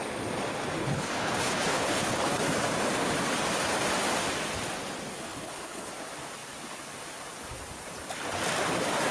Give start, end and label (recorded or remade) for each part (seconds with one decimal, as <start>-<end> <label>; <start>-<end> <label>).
0.0-0.8 recorded; 0.8-2.4 remade; 2.4-5.1 recorded; 5.1-5.9 remade; 5.9-9.1 recorded